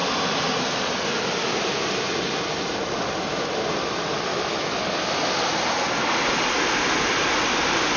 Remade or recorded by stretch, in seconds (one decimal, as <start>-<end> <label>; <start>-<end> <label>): 0.0-4.3 recorded; 4.3-4.8 remade; 4.8-8.0 recorded